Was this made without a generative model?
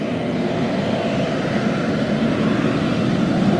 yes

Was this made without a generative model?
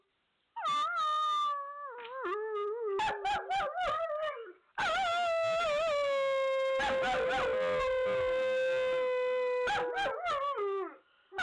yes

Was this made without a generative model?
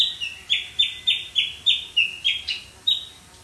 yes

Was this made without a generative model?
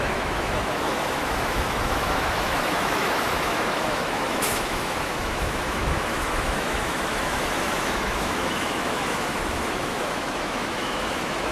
no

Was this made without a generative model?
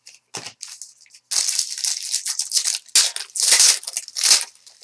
yes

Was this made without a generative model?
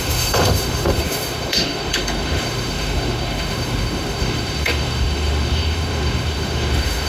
no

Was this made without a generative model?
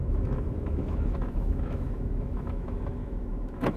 no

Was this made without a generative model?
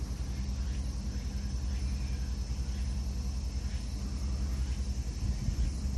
yes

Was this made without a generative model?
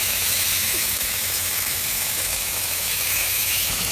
no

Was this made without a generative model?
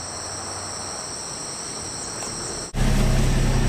yes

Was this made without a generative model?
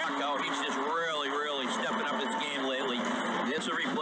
yes